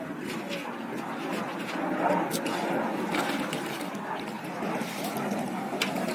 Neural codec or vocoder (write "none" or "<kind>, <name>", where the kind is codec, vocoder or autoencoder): none